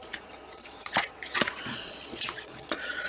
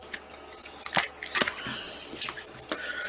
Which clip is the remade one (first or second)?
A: first